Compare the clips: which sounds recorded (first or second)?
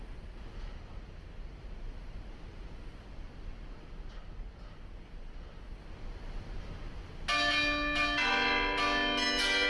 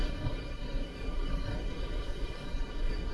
first